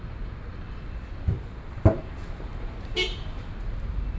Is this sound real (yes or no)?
yes